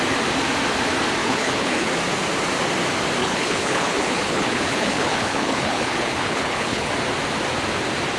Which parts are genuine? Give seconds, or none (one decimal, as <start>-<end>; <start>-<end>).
0.0-1.2; 1.9-3.2; 6.9-8.2